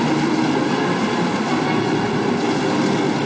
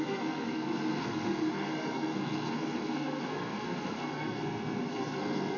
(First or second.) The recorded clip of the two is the first